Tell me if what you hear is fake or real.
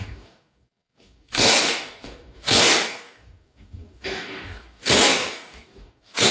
fake